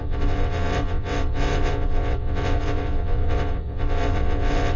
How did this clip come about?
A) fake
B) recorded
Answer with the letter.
A